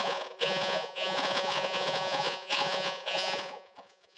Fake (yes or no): yes